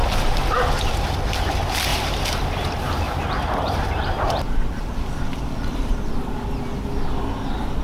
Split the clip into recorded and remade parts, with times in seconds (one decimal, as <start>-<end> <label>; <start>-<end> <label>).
0.0-1.9 recorded; 1.9-6.1 remade; 6.1-7.8 recorded